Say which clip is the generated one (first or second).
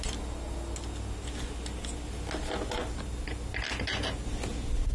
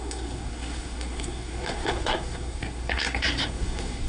second